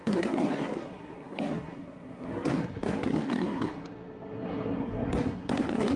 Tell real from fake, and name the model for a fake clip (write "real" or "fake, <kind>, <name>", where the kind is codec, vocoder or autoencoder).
fake, codec, SNAC